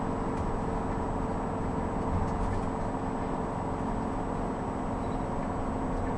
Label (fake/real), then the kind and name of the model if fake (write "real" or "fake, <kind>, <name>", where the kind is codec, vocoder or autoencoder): real